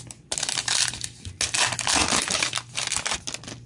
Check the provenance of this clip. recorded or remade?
recorded